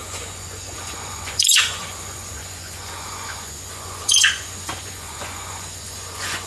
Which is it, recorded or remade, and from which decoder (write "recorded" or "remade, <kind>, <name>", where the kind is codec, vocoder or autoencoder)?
remade, vocoder, Vocos